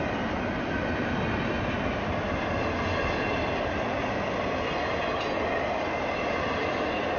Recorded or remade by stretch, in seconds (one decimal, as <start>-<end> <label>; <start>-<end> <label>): 0.0-7.2 recorded